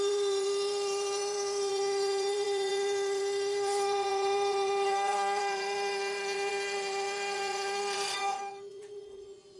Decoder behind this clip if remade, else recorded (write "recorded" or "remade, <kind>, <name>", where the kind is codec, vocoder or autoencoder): remade, vocoder, Vocos